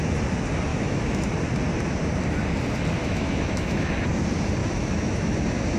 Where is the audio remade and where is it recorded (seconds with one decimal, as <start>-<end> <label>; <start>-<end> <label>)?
0.0-0.7 recorded; 0.7-1.3 remade; 1.3-3.0 recorded; 3.0-3.9 remade; 3.9-4.6 recorded; 4.6-5.3 remade; 5.3-5.8 recorded